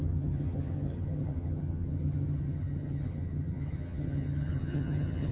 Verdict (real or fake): fake